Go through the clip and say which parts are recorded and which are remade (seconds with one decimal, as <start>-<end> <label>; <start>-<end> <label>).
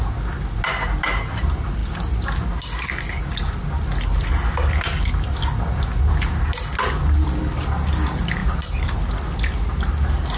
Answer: 0.0-10.4 recorded